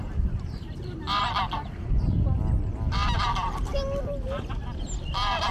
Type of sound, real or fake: real